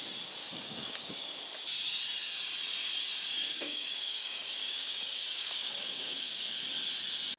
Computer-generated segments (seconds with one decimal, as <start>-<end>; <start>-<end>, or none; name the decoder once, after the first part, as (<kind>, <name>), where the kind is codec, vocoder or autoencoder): 0.4-1.4 (codec, DAC); 3.4-6.6